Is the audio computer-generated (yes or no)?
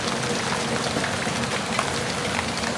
no